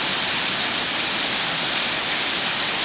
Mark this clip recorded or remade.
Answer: recorded